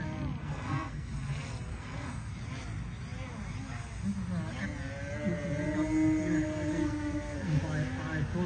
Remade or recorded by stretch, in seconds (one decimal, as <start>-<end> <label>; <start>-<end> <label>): 0.0-0.4 recorded; 0.4-1.1 remade; 1.1-1.7 recorded; 1.7-2.3 remade; 2.3-6.7 recorded; 6.7-7.6 remade; 7.6-8.5 recorded